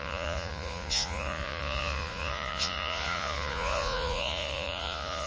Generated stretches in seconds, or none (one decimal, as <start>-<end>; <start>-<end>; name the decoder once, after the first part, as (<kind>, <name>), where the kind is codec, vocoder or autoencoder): 0.0-5.3 (vocoder, Vocos)